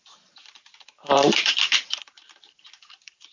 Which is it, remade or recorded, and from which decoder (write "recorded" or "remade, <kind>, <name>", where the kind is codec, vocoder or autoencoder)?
remade, vocoder, BigVGAN v2